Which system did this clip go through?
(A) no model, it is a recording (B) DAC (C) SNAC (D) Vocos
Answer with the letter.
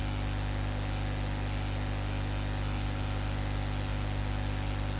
A